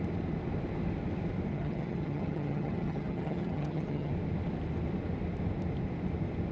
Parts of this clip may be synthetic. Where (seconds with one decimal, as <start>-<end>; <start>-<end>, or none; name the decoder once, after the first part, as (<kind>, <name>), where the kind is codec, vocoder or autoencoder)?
1.5-4.1 (vocoder, HiFi-GAN)